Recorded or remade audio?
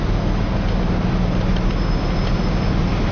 recorded